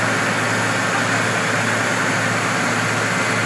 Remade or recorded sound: recorded